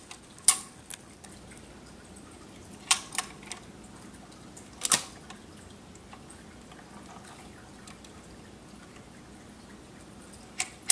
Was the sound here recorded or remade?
recorded